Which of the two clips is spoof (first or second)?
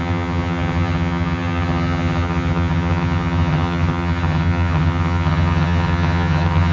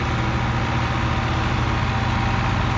first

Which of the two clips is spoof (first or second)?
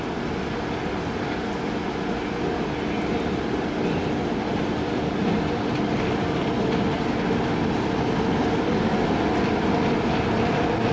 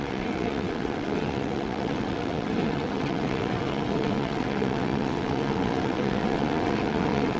second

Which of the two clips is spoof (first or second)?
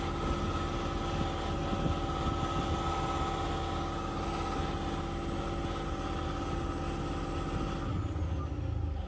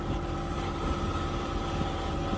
second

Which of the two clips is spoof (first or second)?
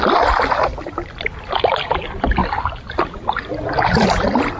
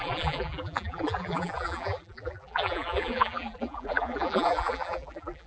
second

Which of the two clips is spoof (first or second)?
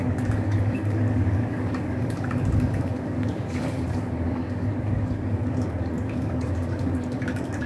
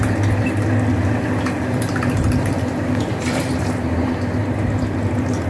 first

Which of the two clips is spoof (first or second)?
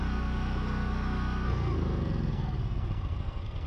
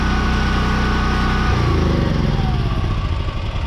first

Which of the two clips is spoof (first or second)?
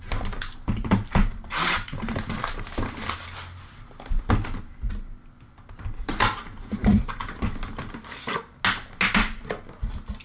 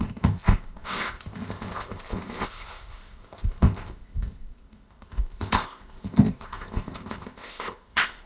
second